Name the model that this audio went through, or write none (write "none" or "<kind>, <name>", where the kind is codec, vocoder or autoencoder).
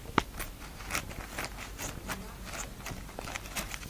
none